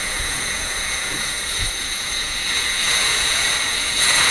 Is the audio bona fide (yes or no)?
no